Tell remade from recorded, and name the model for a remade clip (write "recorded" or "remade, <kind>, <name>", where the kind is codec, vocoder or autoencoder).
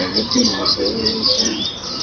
remade, vocoder, BigVGAN v2